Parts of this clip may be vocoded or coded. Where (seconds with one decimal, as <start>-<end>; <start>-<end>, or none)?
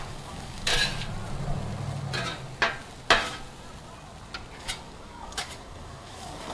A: 0.0-0.7; 4.6-6.5